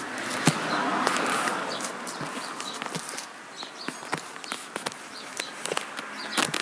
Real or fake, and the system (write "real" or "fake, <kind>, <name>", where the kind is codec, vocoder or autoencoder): real